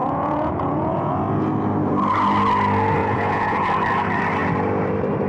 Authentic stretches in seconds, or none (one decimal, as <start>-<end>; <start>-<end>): 1.1-3.0; 3.7-5.3